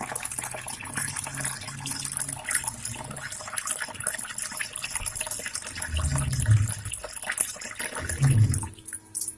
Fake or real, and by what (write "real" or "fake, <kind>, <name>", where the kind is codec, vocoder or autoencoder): real